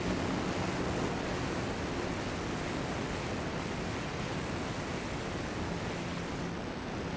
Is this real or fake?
real